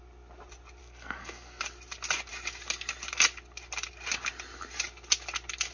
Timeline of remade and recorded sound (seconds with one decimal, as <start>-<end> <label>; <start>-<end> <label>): 0.0-0.8 recorded; 0.8-1.6 remade; 1.6-5.7 recorded